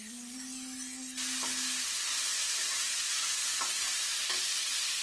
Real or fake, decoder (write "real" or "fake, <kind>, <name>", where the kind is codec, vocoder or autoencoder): real